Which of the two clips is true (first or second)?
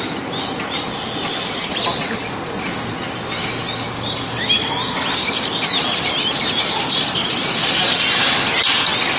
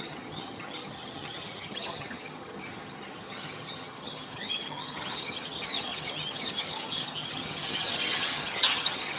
first